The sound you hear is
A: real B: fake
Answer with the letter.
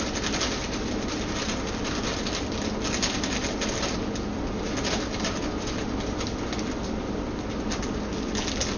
A